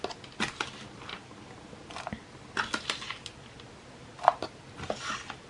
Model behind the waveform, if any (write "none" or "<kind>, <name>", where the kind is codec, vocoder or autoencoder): none